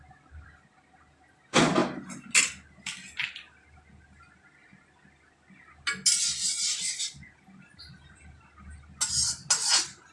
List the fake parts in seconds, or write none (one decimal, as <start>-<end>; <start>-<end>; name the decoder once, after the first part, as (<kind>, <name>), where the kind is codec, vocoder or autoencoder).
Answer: none